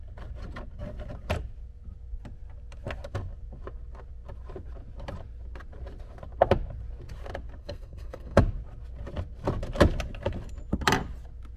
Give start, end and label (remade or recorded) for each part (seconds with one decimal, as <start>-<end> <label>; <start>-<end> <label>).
0.0-7.6 recorded; 7.6-8.4 remade; 8.4-11.6 recorded